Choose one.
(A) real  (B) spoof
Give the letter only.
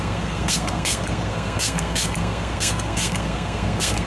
B